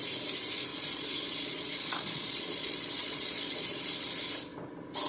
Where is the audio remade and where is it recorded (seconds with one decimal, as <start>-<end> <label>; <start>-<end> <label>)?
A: 0.0-0.7 recorded; 0.7-3.8 remade; 3.8-5.1 recorded

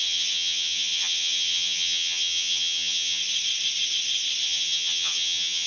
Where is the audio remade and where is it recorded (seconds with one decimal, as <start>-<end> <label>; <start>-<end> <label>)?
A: 0.0-3.2 remade; 3.2-4.4 recorded; 4.4-5.7 remade

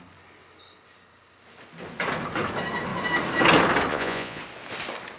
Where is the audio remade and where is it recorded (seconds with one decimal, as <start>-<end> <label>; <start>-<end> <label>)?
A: 0.0-3.9 recorded; 3.9-4.4 remade; 4.4-5.2 recorded

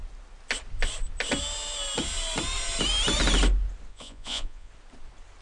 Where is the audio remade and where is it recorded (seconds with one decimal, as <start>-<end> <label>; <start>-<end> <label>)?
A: 0.0-3.9 recorded; 3.9-4.7 remade; 4.7-5.4 recorded

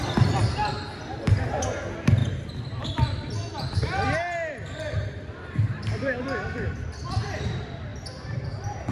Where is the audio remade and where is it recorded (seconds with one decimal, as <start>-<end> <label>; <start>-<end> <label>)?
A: 0.0-0.9 recorded; 0.9-1.4 remade; 1.4-2.2 recorded; 2.2-7.4 remade; 7.4-7.9 recorded; 7.9-8.9 remade

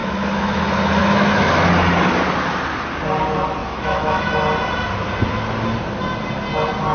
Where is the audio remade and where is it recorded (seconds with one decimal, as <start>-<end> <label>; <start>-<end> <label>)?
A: 0.0-0.6 remade; 0.6-1.0 recorded; 1.0-1.5 remade; 1.5-3.6 recorded; 3.6-4.3 remade; 4.3-6.9 recorded

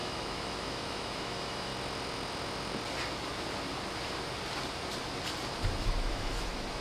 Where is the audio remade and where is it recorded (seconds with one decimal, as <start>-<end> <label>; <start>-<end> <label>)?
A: 0.0-1.7 remade; 1.7-5.8 recorded; 5.8-6.8 remade